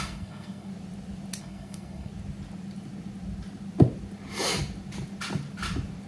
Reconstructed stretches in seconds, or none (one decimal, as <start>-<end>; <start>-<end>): 0.0-0.7; 1.4-2.1

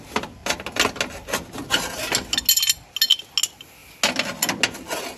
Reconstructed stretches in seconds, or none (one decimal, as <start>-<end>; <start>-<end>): none